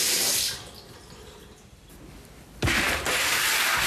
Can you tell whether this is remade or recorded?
remade